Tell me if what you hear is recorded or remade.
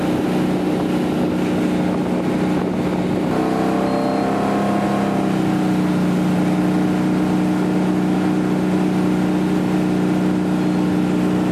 recorded